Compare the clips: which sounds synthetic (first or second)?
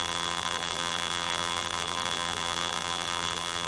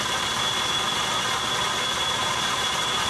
first